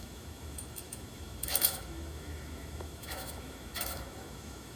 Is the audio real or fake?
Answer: fake